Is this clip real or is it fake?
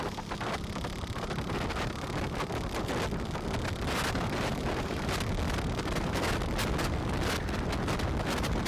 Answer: real